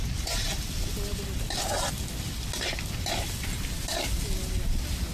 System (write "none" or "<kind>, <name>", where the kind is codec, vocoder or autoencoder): none